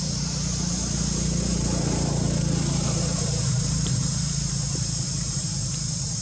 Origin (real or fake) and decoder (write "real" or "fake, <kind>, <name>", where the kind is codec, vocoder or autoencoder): fake, vocoder, BigVGAN v2